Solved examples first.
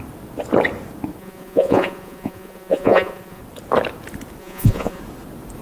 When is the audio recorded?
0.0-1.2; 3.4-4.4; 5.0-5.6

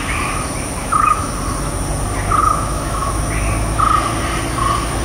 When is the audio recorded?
0.0-0.8; 1.3-2.4; 3.1-5.0

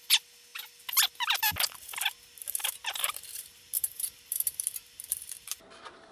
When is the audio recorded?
0.0-2.4

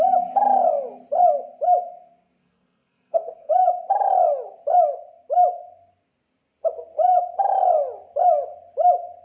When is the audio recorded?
0.0-2.4; 3.5-9.2

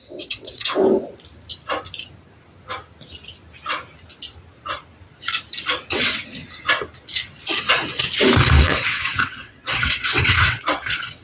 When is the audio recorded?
0.8-5.9; 6.4-8.6

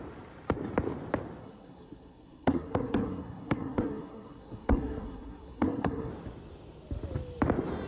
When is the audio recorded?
0.0-1.4; 6.1-7.9

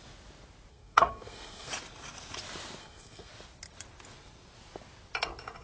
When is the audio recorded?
0.0-0.7; 1.7-2.8; 3.3-5.6

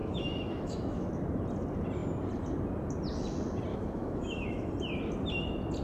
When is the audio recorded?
1.1-3.7; 4.7-5.8